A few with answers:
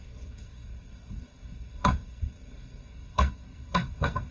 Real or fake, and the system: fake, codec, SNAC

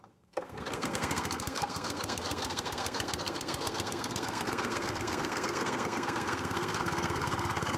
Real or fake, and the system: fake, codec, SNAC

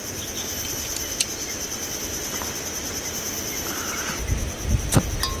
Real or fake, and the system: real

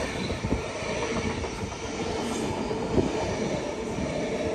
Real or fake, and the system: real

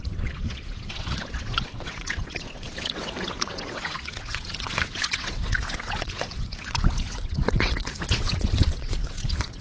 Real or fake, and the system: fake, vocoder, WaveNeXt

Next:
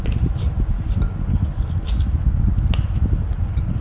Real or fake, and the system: real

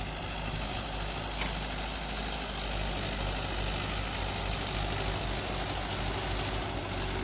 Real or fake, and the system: real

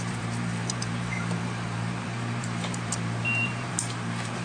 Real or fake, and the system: fake, vocoder, BigVGAN v2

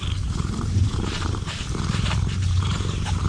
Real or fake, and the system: fake, vocoder, BigVGAN v2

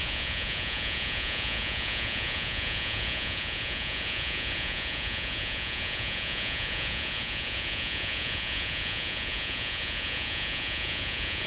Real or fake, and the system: fake, vocoder, Vocos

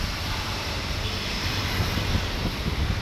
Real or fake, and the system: fake, vocoder, BigVGAN v2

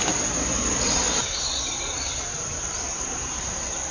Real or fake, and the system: real